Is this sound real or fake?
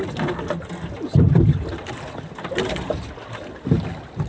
real